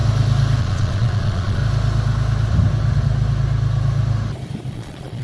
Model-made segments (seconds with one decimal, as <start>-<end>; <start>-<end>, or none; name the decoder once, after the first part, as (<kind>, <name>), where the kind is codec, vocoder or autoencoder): 0.6-1.6 (vocoder, Vocos); 4.7-5.2